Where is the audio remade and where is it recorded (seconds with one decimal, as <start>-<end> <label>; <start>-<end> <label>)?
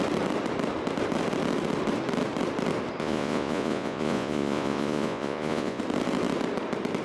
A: 0.0-3.0 recorded; 3.0-5.8 remade; 5.8-7.0 recorded